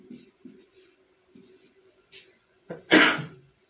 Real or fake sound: fake